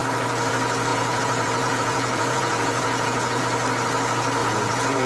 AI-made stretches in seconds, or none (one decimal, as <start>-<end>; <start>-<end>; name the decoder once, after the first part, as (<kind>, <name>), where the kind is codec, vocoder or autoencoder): 0.9-3.4 (vocoder, Vocos); 4.4-5.1